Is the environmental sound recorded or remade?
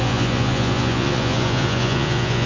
remade